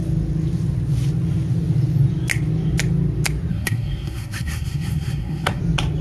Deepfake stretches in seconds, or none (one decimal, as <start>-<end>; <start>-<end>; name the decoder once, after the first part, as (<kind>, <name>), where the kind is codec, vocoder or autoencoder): 3.5-5.6 (codec, SNAC)